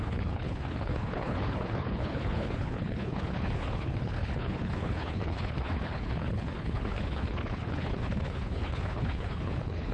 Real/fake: fake